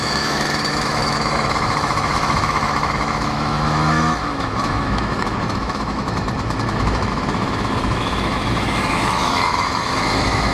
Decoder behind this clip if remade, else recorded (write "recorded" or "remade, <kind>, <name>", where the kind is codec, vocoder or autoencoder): remade, autoencoder, DAC-VAE